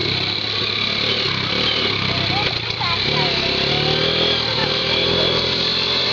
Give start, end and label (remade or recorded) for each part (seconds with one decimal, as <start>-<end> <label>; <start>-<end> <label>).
0.0-4.6 recorded; 4.6-6.1 remade